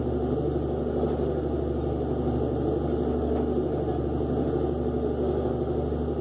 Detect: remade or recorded recorded